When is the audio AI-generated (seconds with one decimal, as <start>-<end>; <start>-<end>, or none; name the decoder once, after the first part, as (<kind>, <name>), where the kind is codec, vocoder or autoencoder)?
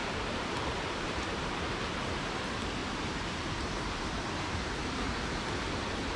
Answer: 0.0-1.6 (vocoder, BigVGAN v2); 2.8-4.2